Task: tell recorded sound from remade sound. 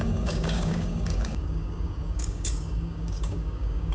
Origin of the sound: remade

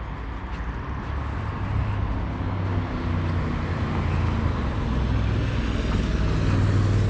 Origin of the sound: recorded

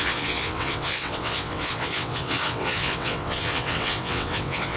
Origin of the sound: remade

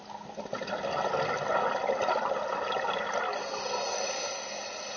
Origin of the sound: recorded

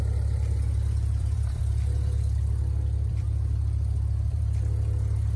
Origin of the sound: remade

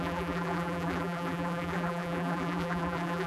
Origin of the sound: remade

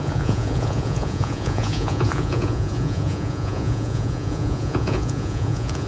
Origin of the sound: remade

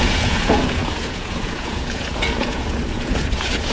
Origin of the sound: remade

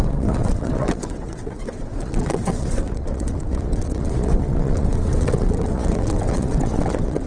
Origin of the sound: remade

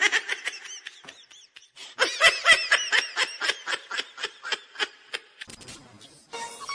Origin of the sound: recorded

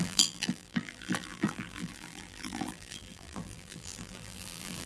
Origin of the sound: remade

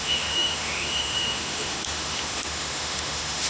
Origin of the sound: remade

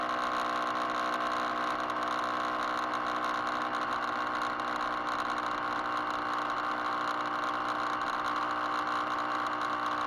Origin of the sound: recorded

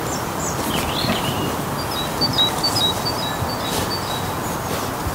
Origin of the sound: recorded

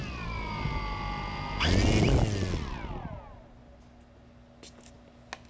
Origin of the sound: recorded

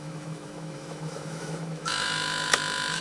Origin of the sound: remade